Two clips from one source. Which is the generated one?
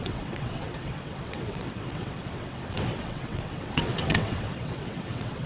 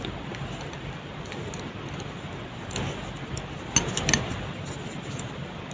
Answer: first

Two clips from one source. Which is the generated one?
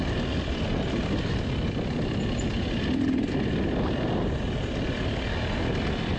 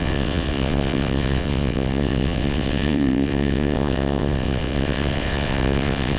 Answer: second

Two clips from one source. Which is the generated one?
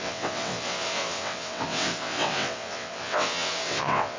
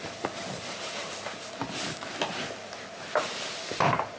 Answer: first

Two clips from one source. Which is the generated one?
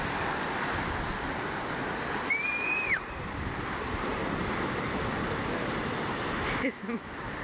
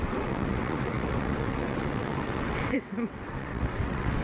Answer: second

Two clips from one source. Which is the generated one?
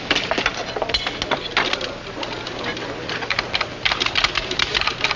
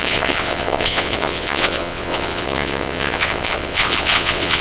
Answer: second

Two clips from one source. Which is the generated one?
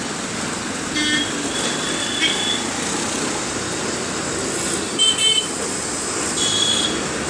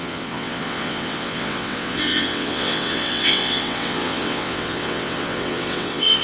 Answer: second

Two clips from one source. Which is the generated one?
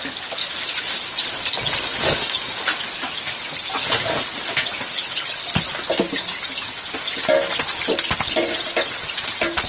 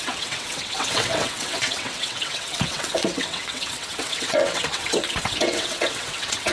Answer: second